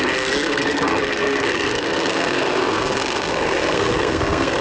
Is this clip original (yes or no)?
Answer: no